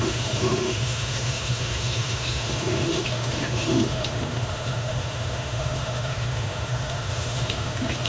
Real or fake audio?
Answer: fake